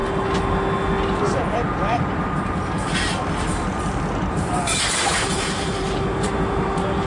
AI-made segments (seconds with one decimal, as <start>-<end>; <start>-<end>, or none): 4.3-7.1